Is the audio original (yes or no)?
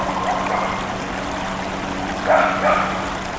yes